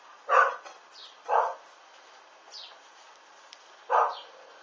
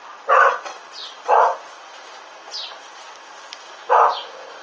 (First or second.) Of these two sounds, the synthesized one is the first